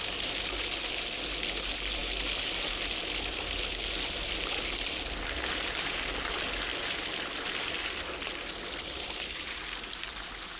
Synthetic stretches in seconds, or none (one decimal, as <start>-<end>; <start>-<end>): none